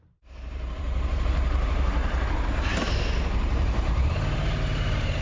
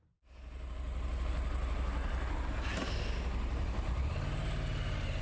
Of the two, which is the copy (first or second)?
first